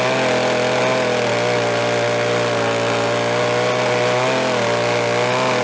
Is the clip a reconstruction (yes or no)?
no